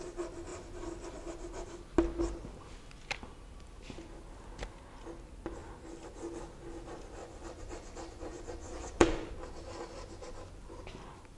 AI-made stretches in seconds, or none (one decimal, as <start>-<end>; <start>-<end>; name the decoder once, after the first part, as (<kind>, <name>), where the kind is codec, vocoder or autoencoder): 7.2-9.3 (vocoder, Vocos)